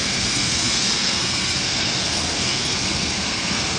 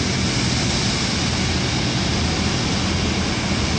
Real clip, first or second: second